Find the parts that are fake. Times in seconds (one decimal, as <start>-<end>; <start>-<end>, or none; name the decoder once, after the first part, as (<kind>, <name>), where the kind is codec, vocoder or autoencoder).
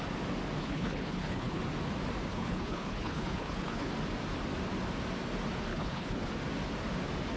0.6-1.6 (codec, HILCodec); 2.3-3.9; 5.7-6.3